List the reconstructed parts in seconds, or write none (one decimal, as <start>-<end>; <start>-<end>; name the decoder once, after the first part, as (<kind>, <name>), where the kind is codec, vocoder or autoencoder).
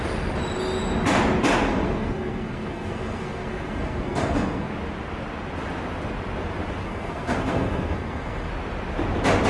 1.7-4.7 (codec, SNAC); 6.8-8.5